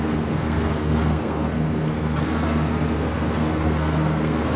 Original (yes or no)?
no